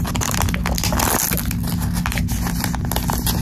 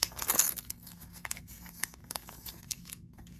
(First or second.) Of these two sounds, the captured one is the first